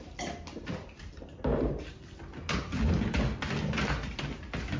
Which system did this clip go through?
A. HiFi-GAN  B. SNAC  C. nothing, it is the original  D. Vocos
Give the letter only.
C